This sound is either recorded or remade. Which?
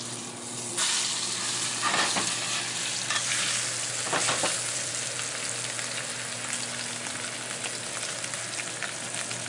recorded